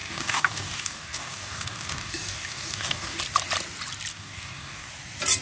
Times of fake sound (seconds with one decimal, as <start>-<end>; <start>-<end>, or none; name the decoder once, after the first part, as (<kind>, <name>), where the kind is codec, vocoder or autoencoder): 0.0-3.2 (codec, DAC); 4.1-4.9